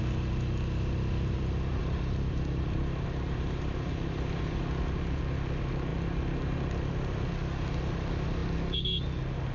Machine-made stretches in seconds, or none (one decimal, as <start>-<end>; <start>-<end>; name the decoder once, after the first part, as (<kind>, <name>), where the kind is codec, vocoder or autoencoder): 1.7-4.6 (vocoder, BigVGAN v2)